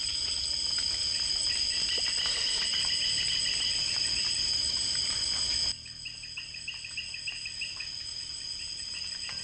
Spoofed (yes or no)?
no